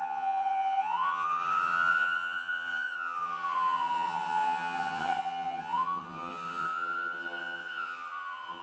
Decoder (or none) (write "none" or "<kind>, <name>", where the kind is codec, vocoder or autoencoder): vocoder, HiFi-GAN